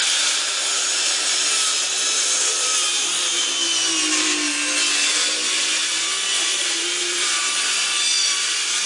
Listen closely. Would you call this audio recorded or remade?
remade